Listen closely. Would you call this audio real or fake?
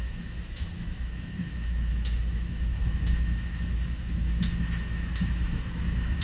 fake